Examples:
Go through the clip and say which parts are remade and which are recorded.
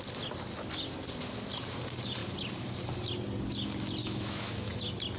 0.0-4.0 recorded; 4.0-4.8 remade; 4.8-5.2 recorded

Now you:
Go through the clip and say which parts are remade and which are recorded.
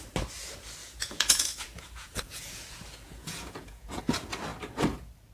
0.0-0.8 recorded; 0.8-4.0 remade; 4.0-5.3 recorded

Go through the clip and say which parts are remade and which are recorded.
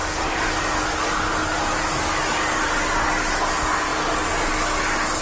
0.0-0.8 remade; 0.8-5.2 recorded